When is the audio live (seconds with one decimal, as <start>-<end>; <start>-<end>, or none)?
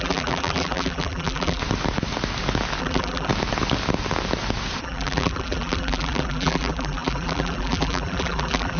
1.6-2.8; 3.3-4.8